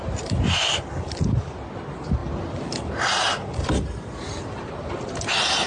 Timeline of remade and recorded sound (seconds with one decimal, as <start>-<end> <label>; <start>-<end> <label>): 0.0-5.7 recorded